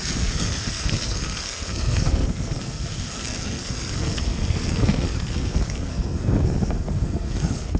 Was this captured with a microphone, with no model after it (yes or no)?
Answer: no